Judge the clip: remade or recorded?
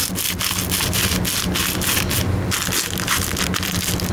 recorded